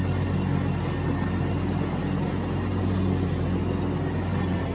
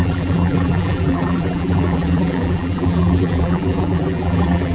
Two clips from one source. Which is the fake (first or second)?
second